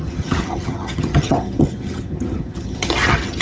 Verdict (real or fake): fake